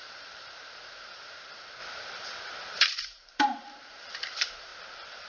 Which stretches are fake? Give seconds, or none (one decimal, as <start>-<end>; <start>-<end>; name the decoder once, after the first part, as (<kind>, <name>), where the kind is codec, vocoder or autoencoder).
0.0-1.8 (vocoder, BigVGAN v2); 2.8-4.7